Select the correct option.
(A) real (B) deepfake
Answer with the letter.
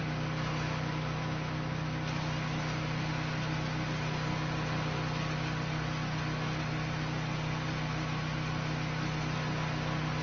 A